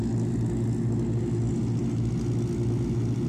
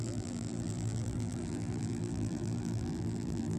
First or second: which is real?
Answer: first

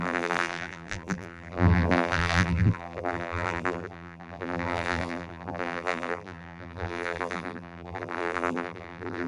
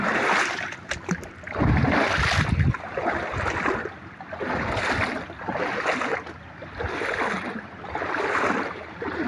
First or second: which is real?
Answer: second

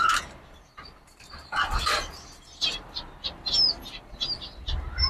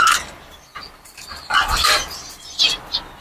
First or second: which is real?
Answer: second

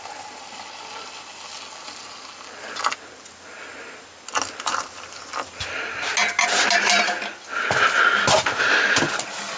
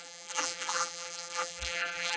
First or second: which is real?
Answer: first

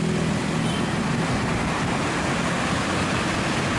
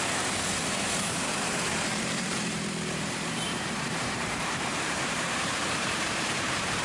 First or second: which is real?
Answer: first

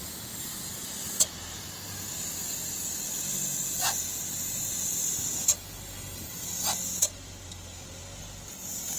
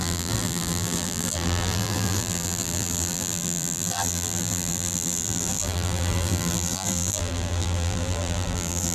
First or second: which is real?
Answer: first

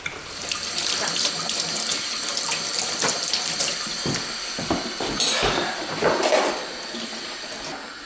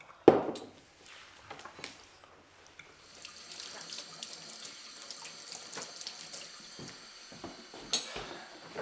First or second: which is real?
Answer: second